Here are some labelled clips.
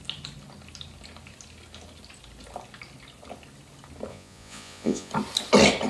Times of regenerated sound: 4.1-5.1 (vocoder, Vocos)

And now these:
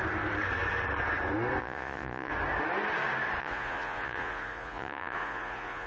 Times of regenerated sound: 1.6-2.3 (vocoder, Vocos); 3.4-5.9

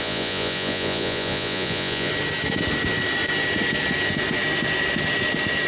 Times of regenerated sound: 0.0-2.1 (vocoder, Vocos)